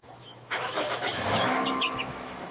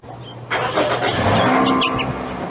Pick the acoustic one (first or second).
second